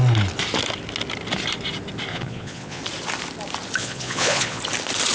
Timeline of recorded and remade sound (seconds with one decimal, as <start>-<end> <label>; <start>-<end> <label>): 0.0-2.1 recorded; 2.1-2.8 remade; 2.8-3.8 recorded; 3.8-4.6 remade; 4.6-5.1 recorded

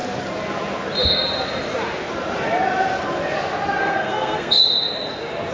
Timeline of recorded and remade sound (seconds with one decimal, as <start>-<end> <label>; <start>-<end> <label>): 0.0-3.8 recorded; 3.8-4.6 remade; 4.6-5.5 recorded

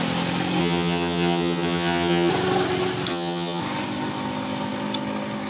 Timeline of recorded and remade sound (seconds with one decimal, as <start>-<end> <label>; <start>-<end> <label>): 0.0-0.6 recorded; 0.6-2.3 remade; 2.3-3.1 recorded; 3.1-3.6 remade; 3.6-5.5 recorded